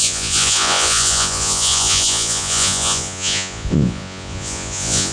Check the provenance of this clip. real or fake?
fake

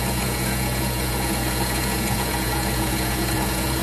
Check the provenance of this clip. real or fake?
fake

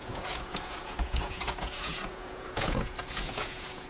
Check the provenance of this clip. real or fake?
fake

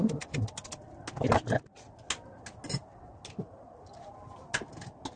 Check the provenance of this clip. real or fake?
real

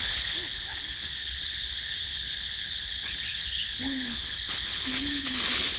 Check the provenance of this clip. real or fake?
fake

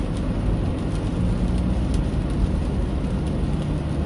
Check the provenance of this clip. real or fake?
real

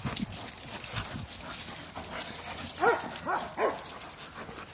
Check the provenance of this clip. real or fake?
real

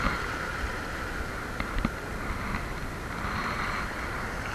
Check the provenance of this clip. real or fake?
real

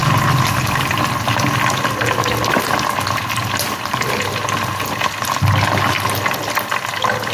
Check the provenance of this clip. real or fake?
real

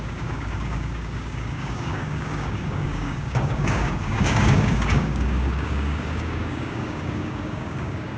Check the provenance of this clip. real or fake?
fake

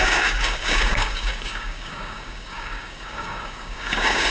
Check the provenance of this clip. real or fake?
fake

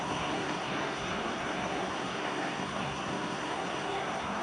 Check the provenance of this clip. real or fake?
fake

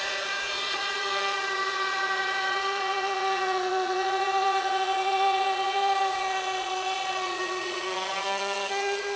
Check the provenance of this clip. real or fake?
fake